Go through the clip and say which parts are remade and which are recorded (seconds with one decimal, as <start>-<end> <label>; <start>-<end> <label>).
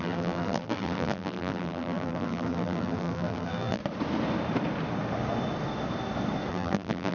0.0-3.8 remade; 3.8-6.5 recorded; 6.5-7.1 remade